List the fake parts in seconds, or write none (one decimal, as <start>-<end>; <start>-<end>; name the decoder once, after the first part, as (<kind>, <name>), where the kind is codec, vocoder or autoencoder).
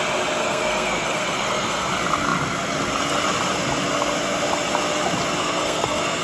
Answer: 0.4-1.9 (codec, SNAC); 5.4-6.2